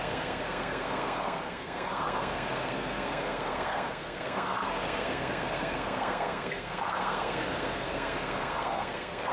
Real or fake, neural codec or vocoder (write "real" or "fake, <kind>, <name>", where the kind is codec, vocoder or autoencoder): fake, codec, SNAC